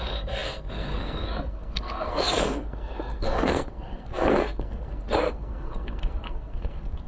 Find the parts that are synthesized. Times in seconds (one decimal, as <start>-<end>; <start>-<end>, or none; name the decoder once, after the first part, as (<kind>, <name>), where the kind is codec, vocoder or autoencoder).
0.0-7.1 (codec, SNAC)